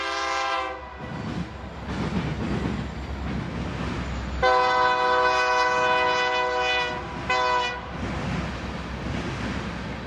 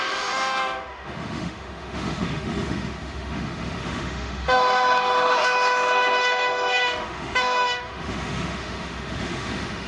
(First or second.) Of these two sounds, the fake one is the second